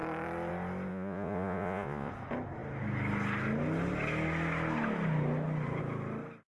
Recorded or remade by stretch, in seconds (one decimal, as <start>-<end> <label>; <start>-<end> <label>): 0.0-0.9 recorded; 0.9-2.1 remade; 2.1-6.5 recorded